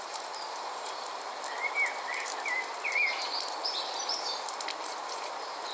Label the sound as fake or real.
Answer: fake